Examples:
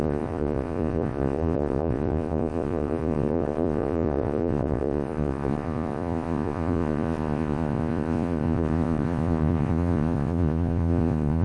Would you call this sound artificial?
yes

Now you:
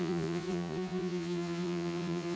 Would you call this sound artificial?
yes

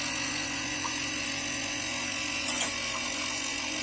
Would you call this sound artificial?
yes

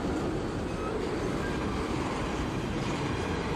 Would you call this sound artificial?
no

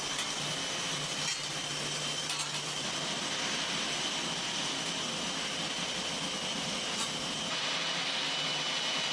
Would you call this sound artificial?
no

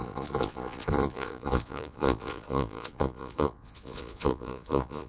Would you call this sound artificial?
yes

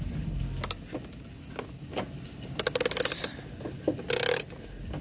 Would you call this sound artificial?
no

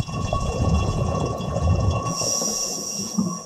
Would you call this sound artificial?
yes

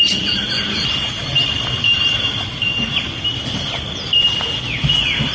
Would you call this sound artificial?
no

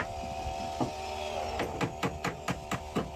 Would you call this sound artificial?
no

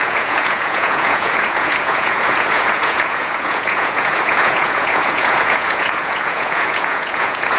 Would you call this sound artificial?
yes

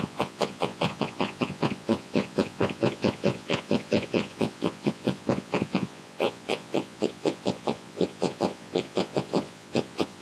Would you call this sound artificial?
yes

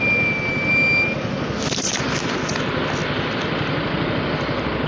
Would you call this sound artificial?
no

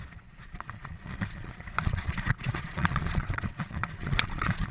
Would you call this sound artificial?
yes